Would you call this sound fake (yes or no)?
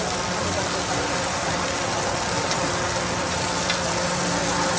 no